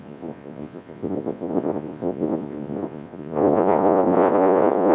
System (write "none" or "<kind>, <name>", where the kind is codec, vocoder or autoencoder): vocoder, Vocos